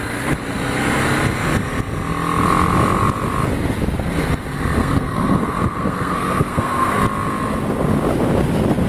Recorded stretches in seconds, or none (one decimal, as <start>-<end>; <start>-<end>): 0.0-4.8; 7.0-8.9